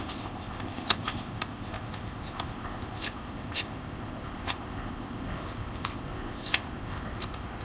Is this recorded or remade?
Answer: remade